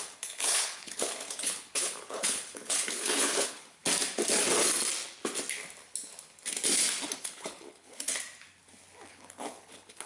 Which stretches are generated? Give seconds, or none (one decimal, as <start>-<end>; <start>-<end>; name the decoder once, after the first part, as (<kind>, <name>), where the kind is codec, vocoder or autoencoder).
0.0-3.8 (codec, HILCodec); 7.2-8.1; 9.1-10.1